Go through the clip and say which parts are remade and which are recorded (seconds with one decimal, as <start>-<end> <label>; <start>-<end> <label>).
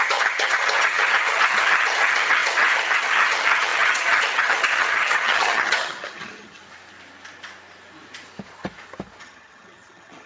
0.0-6.6 remade; 6.6-9.2 recorded; 9.2-10.3 remade